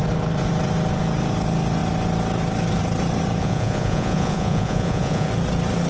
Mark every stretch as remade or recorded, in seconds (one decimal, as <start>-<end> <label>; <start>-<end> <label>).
0.0-3.4 recorded; 3.4-5.3 remade; 5.3-5.9 recorded